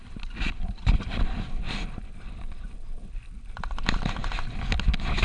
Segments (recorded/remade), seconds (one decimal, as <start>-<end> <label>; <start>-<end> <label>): 0.0-5.2 recorded